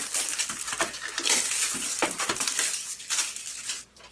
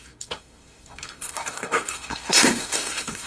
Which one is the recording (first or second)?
first